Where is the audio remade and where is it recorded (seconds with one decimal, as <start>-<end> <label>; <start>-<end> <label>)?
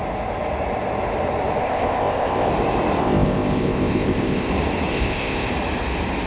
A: 0.0-1.6 recorded; 1.6-2.5 remade; 2.5-3.0 recorded; 3.0-4.5 remade; 4.5-4.9 recorded; 4.9-5.5 remade; 5.5-6.3 recorded